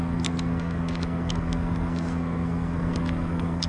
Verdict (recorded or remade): remade